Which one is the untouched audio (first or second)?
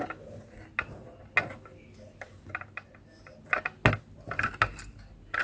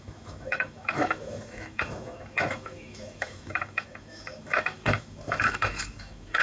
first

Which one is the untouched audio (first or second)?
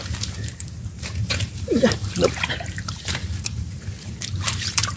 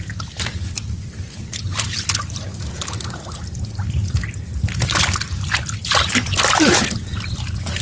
second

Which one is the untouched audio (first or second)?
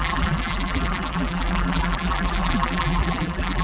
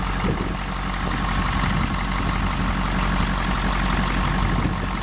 second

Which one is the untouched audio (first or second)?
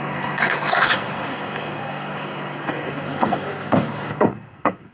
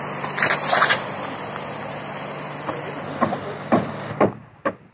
second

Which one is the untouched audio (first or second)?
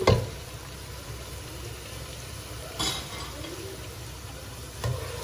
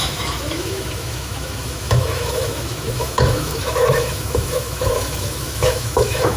first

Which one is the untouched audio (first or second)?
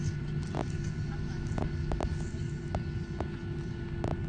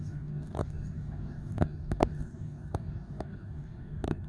first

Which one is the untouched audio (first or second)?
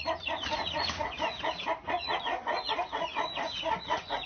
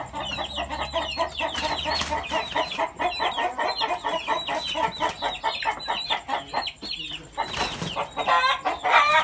second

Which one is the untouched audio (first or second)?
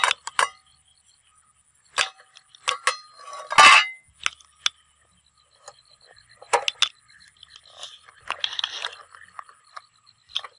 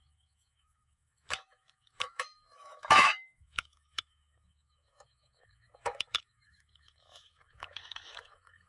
first